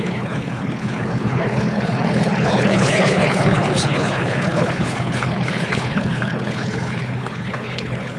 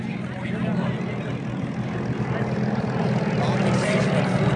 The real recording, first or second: second